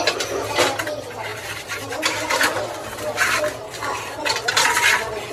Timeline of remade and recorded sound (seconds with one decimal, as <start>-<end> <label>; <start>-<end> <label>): 0.0-5.3 recorded